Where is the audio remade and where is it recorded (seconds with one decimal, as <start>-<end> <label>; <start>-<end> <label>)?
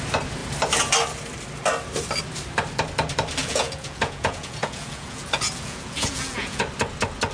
0.0-3.4 recorded; 3.4-6.6 remade; 6.6-7.3 recorded